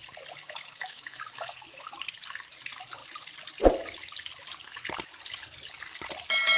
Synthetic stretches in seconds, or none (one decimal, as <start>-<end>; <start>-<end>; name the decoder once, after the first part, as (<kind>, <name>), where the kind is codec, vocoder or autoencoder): 0.4-1.9 (autoencoder, DAC-VAE)